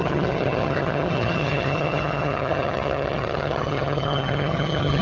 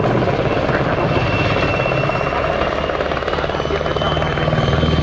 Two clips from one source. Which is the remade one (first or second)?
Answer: first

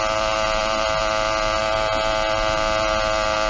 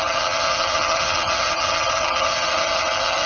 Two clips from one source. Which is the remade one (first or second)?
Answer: second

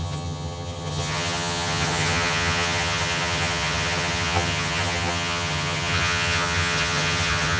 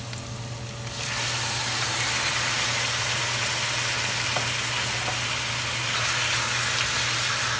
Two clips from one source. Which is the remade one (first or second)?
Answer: first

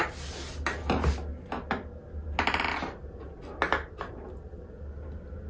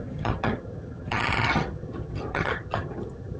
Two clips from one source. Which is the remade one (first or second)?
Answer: second